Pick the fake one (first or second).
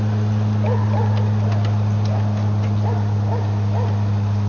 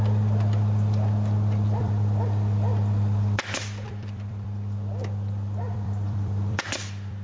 second